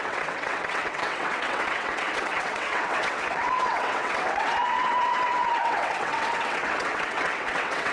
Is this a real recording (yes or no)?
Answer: no